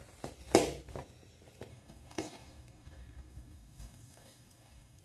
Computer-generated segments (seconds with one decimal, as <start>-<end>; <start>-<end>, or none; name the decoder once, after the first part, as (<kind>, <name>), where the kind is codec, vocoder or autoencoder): 1.7-5.0 (codec, DAC)